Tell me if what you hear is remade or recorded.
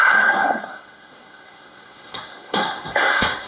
remade